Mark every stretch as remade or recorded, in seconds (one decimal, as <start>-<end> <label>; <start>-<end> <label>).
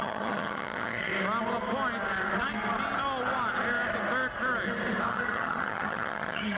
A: 0.0-1.1 remade; 1.1-5.1 recorded; 5.1-6.6 remade